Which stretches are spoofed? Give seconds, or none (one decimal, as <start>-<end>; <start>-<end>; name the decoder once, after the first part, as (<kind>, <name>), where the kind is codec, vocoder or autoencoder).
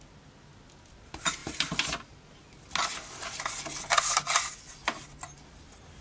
none